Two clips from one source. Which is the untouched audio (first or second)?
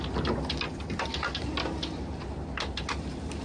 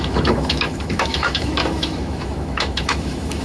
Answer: first